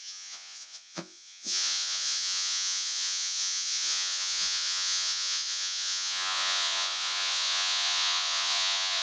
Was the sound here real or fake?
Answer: fake